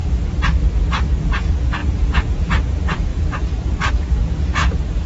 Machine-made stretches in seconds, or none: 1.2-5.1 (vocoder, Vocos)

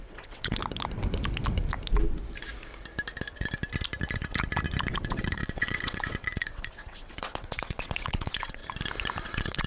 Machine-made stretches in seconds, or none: 0.0-0.6 (vocoder, WaveNeXt); 4.9-8.6; 9.2-9.7

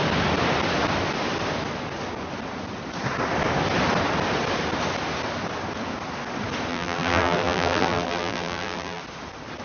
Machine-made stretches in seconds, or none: 6.7-9.0 (vocoder, BigVGAN v2)

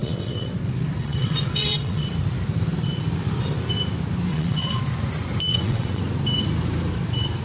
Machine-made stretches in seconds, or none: 0.0-0.5 (vocoder, WaveNeXt); 1.0-2.1; 4.3-4.8; 5.5-6.0

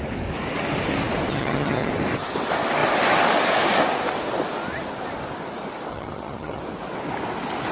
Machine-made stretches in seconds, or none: 1.3-1.9 (vocoder, HiFi-GAN); 5.9-6.6